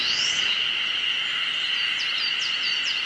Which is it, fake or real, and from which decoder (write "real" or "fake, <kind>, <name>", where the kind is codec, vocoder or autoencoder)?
real